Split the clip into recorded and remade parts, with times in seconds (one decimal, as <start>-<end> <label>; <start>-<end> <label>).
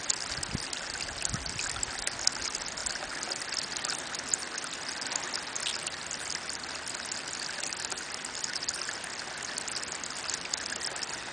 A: 0.0-11.3 recorded